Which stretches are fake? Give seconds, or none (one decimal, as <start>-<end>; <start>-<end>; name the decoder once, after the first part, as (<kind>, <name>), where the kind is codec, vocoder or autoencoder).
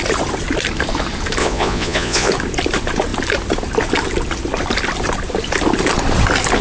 1.4-2.3 (vocoder, Vocos)